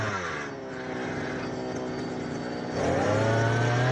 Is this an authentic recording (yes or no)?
yes